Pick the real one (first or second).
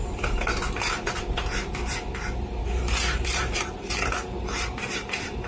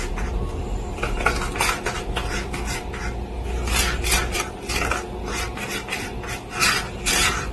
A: second